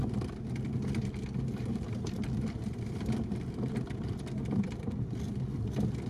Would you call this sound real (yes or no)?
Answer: yes